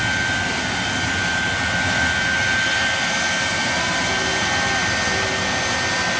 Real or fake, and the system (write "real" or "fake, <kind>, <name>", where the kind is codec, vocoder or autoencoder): real